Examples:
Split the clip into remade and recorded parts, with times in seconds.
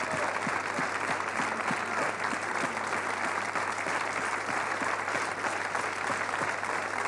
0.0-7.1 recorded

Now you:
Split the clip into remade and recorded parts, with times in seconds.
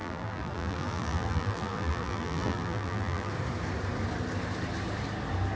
0.0-3.3 remade; 3.3-5.6 recorded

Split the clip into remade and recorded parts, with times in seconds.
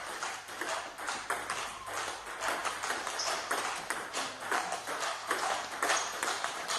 0.0-2.6 recorded; 2.6-4.3 remade; 4.3-5.2 recorded; 5.2-6.8 remade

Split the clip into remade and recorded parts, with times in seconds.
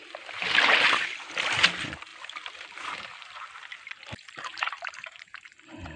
0.0-4.5 recorded; 4.5-5.5 remade; 5.5-6.0 recorded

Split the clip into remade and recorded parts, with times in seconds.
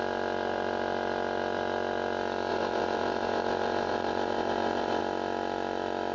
0.0-2.5 recorded; 2.5-5.0 remade; 5.0-6.1 recorded